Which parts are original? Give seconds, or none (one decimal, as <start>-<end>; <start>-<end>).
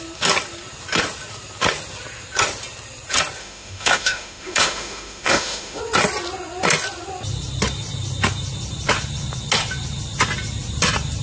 0.0-3.4; 5.8-11.2